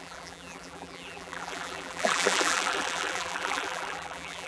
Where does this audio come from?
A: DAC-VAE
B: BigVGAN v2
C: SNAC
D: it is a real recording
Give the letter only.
B